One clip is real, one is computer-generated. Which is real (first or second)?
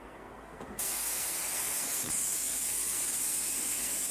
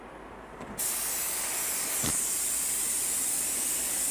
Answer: second